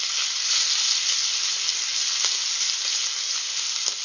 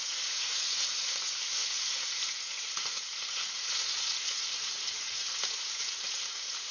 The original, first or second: first